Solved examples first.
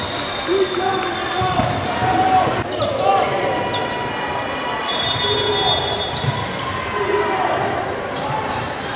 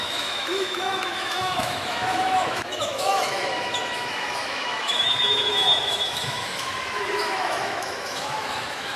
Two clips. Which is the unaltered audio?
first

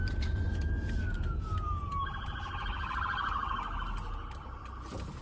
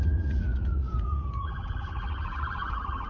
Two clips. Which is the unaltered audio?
first